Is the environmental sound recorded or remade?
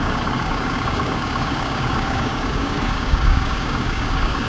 remade